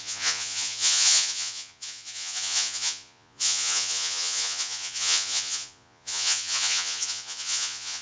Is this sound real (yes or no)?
no